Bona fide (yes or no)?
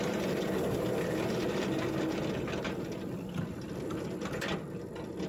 yes